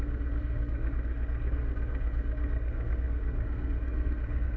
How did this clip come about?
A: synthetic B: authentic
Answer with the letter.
A